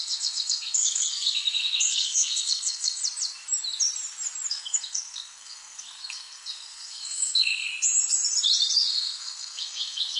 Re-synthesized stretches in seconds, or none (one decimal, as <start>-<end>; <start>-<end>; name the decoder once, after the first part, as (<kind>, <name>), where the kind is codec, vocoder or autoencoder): 0.0-3.0 (codec, SNAC); 4.5-7.7; 8.9-10.2